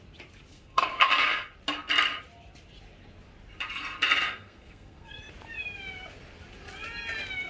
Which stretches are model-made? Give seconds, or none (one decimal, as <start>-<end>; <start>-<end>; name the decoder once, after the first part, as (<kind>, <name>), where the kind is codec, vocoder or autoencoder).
0.5-1.1 (codec, SNAC); 4.4-5.2